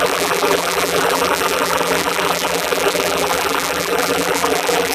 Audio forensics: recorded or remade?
remade